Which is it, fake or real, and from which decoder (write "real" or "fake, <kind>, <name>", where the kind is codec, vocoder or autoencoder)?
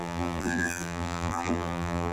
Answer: fake, vocoder, BigVGAN v2